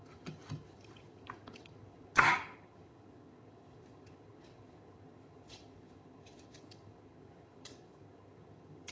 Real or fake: fake